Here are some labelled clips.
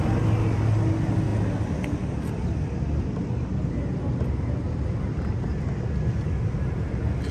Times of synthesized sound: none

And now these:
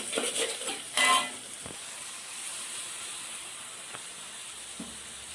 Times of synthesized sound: none

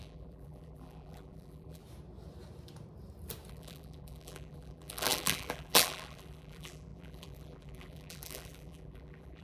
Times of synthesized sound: 0.0-1.8 (vocoder, BigVGAN v2); 3.5-9.4

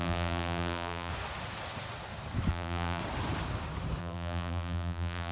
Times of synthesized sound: 0.0-1.1 (vocoder, BigVGAN v2); 2.5-3.0; 4.0-5.3

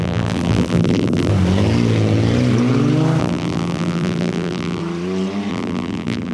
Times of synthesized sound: 0.0-1.3 (vocoder, BigVGAN v2); 3.2-4.8; 5.5-6.3

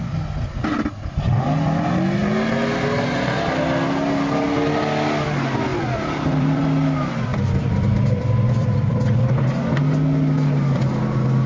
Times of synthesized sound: 5.7-6.6 (vocoder, BigVGAN v2); 7.3-9.4

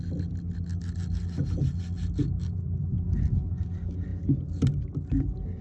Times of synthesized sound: 4.1-4.9 (vocoder, BigVGAN v2)

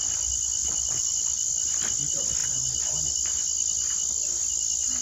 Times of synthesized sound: 0.6-1.5 (vocoder, BigVGAN v2)